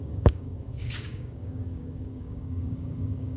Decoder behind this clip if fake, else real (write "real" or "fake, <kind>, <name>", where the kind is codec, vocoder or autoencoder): fake, codec, DAC